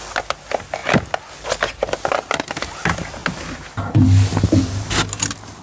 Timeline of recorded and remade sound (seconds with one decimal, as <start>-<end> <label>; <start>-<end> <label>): 0.0-5.6 recorded